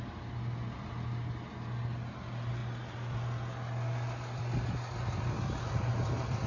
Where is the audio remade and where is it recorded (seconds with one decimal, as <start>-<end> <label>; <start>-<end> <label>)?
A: 0.0-6.5 recorded